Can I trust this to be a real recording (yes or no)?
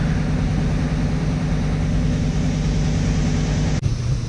yes